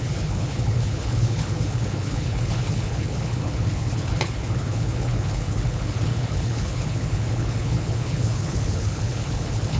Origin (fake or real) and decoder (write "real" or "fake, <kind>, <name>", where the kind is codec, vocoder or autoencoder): fake, codec, HILCodec